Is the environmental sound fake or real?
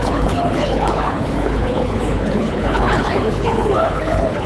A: fake